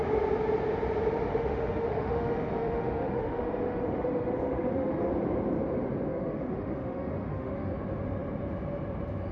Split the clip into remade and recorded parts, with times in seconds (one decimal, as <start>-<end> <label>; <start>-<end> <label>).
0.0-1.3 recorded; 1.3-5.1 remade; 5.1-6.1 recorded; 6.1-7.7 remade; 7.7-9.3 recorded

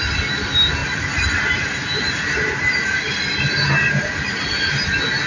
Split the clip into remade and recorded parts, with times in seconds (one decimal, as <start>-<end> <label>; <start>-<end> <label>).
0.0-5.3 recorded

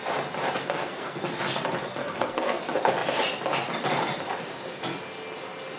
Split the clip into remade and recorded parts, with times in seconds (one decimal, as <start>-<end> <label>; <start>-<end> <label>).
0.0-0.6 recorded; 0.6-1.2 remade; 1.2-2.0 recorded; 2.0-2.6 remade; 2.6-5.8 recorded

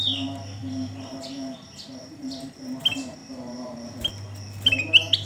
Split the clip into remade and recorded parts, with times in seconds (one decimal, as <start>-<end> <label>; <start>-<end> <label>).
0.0-0.6 recorded; 0.6-2.2 remade; 2.2-3.2 recorded; 3.2-4.1 remade; 4.1-5.3 recorded

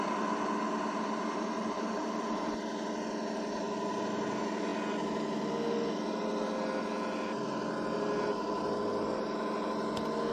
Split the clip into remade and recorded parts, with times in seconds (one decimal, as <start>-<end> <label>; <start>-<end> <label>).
0.0-10.3 recorded

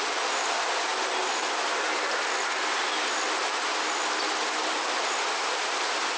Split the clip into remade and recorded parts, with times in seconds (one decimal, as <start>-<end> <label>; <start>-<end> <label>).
0.0-6.2 recorded

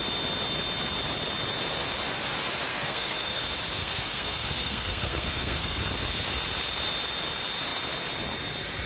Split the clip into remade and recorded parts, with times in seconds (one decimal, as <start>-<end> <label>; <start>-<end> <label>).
0.0-2.7 recorded; 2.7-3.4 remade; 3.4-3.8 recorded; 3.8-5.8 remade; 5.8-8.9 recorded

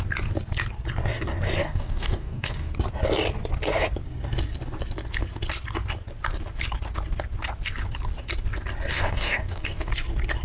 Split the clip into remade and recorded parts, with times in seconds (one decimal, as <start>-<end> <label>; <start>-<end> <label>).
0.0-1.6 recorded; 1.6-2.7 remade; 2.7-8.9 recorded; 8.9-9.9 remade; 9.9-10.4 recorded